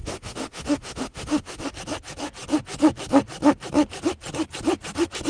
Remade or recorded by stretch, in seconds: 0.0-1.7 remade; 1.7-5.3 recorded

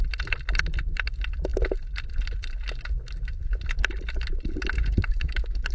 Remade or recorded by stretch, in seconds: 0.0-5.1 recorded; 5.1-5.7 remade

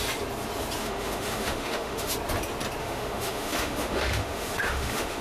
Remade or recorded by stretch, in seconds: 0.0-0.8 recorded; 0.8-2.1 remade; 2.1-2.8 recorded; 2.8-5.2 remade

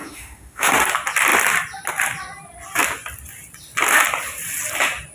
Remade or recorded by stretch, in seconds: 0.0-0.7 remade; 0.7-5.1 recorded

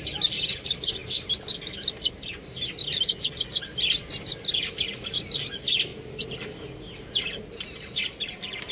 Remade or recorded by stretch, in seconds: 0.0-8.7 recorded

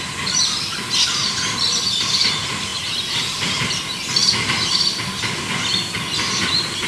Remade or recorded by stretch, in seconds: 0.0-0.4 recorded; 0.4-1.4 remade; 1.4-2.7 recorded; 2.7-3.7 remade; 3.7-4.2 recorded; 4.2-5.5 remade; 5.5-6.9 recorded

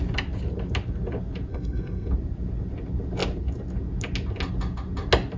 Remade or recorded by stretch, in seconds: 0.0-1.5 recorded; 1.5-2.1 remade; 2.1-5.4 recorded

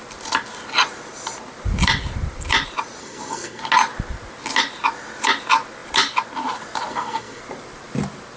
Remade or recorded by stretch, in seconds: 0.0-3.0 recorded; 3.0-3.6 remade; 3.6-6.9 recorded; 6.9-7.4 remade; 7.4-8.4 recorded